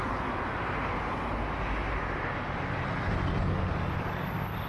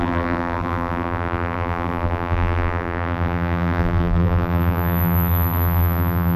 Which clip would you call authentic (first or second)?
first